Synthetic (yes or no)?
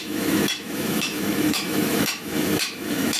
yes